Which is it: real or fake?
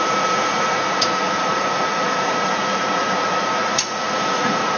fake